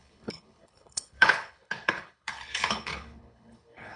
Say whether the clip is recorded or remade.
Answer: remade